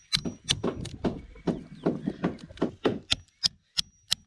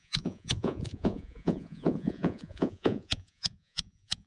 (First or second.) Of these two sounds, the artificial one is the second